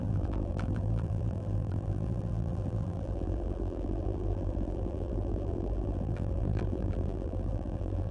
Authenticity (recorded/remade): remade